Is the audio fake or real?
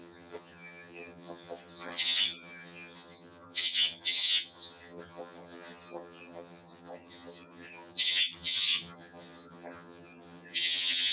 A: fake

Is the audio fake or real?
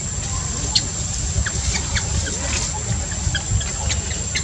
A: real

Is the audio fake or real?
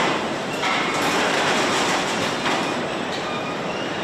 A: fake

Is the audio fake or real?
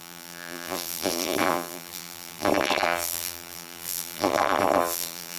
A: fake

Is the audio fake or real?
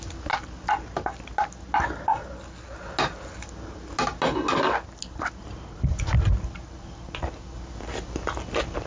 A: real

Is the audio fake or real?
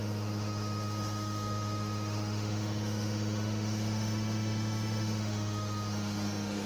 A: fake